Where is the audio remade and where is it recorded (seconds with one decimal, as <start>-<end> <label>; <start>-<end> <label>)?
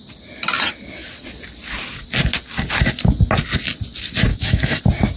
0.0-4.3 recorded; 4.3-4.8 remade; 4.8-5.2 recorded